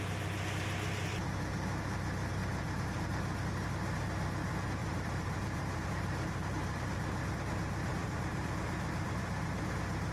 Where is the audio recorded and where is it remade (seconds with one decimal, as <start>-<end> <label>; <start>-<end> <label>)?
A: 0.0-2.4 recorded; 2.4-3.1 remade; 3.1-4.8 recorded; 4.8-7.3 remade; 7.3-8.0 recorded; 8.0-9.6 remade; 9.6-10.1 recorded

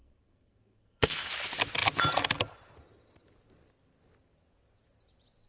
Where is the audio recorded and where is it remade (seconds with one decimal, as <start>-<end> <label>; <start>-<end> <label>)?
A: 0.0-1.3 remade; 1.3-5.5 recorded

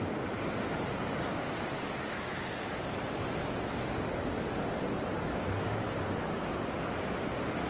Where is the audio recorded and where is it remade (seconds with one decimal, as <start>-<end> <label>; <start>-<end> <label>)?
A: 0.0-7.7 recorded

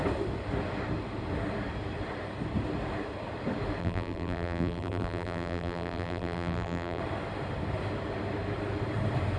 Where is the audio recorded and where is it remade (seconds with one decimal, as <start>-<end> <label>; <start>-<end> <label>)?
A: 0.0-3.8 recorded; 3.8-7.0 remade; 7.0-9.4 recorded

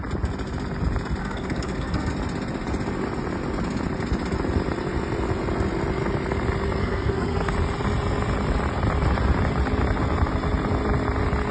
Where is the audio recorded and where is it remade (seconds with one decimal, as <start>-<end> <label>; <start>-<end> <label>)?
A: 0.0-1.2 recorded; 1.2-2.1 remade; 2.1-6.8 recorded; 6.8-7.5 remade; 7.5-11.5 recorded

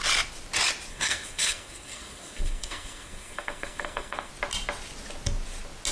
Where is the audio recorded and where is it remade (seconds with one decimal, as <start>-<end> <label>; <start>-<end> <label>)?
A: 0.0-0.9 recorded; 0.9-4.3 remade; 4.3-5.9 recorded

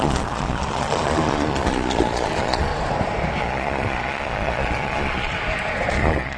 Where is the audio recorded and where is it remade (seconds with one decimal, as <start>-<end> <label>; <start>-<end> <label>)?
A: 0.0-2.7 remade; 2.7-3.4 recorded; 3.4-5.3 remade; 5.3-5.9 recorded; 5.9-6.4 remade

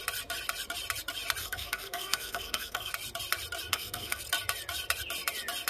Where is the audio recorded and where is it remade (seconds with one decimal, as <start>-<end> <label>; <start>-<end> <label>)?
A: 0.0-1.4 recorded; 1.4-2.9 remade; 2.9-3.7 recorded; 3.7-4.2 remade; 4.2-5.7 recorded